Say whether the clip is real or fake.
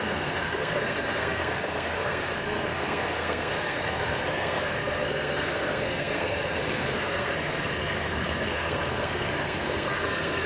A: fake